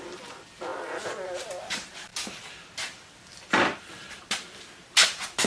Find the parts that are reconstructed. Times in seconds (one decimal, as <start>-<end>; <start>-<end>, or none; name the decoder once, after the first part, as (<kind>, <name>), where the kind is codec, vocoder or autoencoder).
0.0-0.7 (vocoder, BigVGAN v2); 1.6-5.5